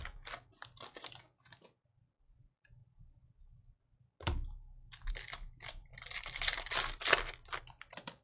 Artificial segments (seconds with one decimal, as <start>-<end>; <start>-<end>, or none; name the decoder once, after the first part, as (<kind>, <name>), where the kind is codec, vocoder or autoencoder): none